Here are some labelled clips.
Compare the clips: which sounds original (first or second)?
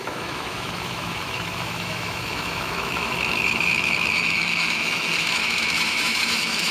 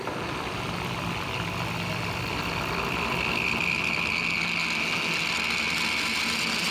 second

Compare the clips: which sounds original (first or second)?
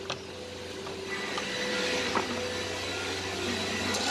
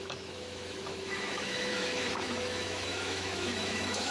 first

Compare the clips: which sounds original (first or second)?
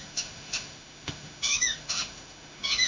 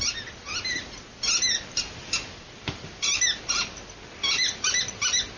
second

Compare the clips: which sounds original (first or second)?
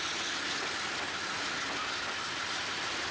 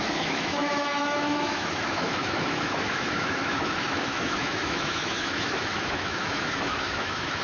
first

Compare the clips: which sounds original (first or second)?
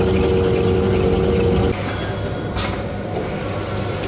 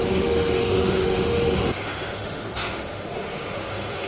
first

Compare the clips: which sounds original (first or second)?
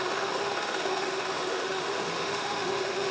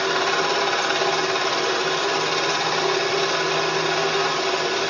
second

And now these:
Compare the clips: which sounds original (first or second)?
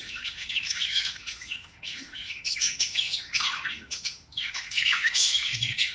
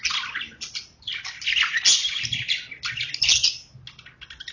second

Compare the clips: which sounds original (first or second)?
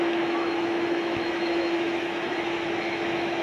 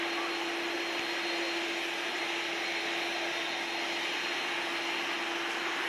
second